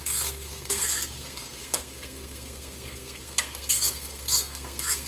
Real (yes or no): no